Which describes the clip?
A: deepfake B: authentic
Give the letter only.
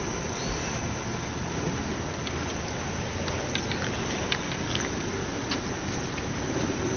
B